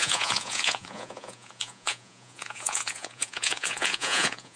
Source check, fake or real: fake